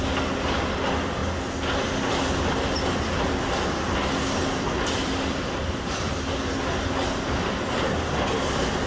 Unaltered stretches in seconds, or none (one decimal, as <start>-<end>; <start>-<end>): 0.0-8.9